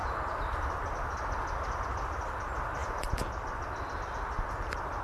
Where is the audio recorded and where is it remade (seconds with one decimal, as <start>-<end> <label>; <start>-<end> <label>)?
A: 0.0-5.0 recorded